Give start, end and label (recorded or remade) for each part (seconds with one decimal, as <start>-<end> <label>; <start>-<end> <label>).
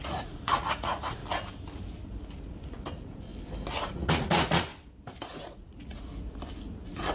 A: 0.0-1.2 remade; 1.2-2.6 recorded; 2.6-3.3 remade; 3.3-3.8 recorded; 3.8-4.7 remade; 4.7-5.3 recorded; 5.3-6.1 remade; 6.1-7.1 recorded